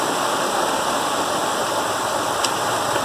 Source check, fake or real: real